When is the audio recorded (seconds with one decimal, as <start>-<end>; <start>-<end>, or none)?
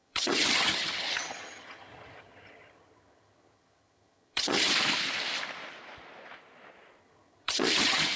4.7-7.0